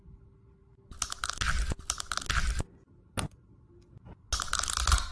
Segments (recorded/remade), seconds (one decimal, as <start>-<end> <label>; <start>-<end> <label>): 0.0-5.1 recorded